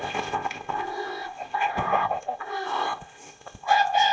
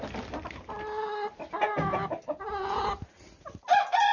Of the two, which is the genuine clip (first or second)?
second